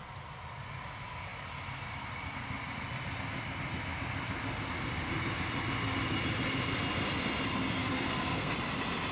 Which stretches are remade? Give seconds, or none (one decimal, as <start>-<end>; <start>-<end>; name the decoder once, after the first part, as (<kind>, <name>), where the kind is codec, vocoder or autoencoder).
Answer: 7.8-8.5 (codec, SNAC)